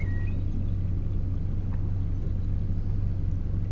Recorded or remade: recorded